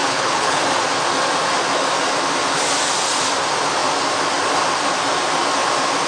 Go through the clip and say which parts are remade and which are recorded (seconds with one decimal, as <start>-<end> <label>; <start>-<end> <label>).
0.0-0.6 remade; 0.6-6.1 recorded